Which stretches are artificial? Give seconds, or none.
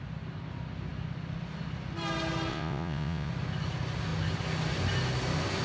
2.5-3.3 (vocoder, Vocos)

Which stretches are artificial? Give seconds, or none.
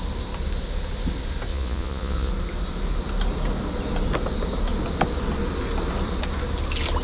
1.5-2.3 (vocoder, Vocos)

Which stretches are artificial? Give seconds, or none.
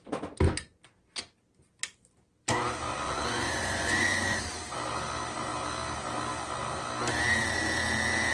2.9-4.4 (vocoder, Vocos)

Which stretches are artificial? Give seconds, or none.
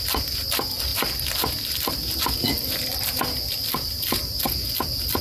none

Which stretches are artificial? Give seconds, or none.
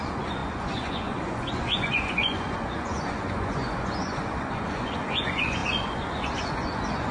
0.0-7.1 (vocoder, Vocos)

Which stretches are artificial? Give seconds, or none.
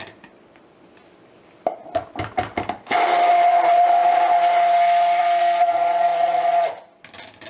none